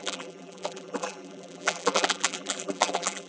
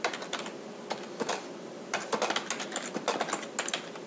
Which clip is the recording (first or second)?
second